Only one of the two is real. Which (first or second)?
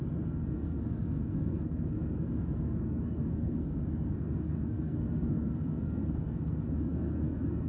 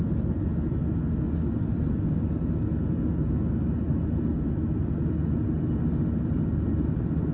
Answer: second